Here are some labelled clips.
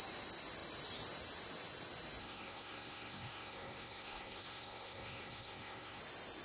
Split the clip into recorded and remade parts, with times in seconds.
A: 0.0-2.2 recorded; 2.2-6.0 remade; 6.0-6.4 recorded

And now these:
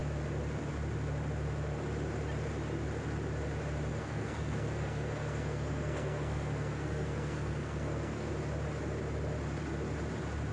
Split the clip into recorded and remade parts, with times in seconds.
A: 0.0-3.9 recorded; 3.9-8.3 remade; 8.3-10.5 recorded

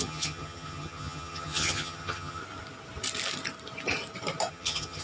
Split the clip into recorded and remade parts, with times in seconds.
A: 0.0-2.4 remade; 2.4-4.5 recorded; 4.5-5.0 remade

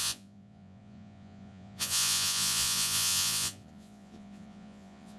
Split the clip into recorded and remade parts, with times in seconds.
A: 0.0-5.2 remade